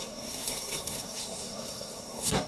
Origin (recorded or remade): remade